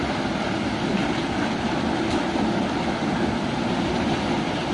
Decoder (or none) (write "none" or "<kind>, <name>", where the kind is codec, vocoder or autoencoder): none